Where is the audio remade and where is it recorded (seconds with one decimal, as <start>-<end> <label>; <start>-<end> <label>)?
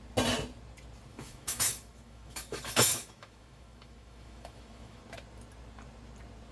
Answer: 0.0-1.1 recorded; 1.1-5.0 remade; 5.0-6.5 recorded